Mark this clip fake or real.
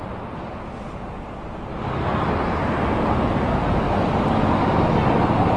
real